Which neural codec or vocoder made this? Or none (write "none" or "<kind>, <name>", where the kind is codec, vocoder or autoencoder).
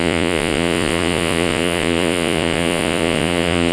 vocoder, Vocos